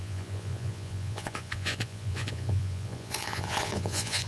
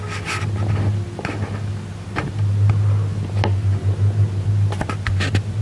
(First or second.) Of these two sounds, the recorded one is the second